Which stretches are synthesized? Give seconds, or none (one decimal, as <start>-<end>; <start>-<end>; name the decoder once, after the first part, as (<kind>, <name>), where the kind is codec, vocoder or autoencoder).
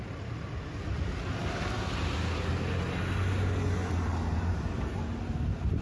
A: none